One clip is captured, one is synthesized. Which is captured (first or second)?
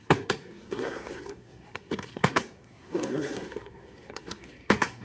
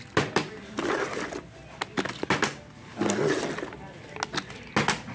second